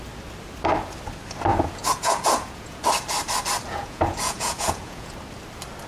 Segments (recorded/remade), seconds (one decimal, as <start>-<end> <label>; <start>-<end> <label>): 0.0-1.5 recorded; 1.5-2.8 remade; 2.8-3.7 recorded; 3.7-5.1 remade; 5.1-5.9 recorded